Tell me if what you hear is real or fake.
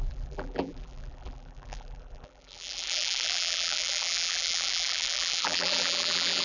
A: fake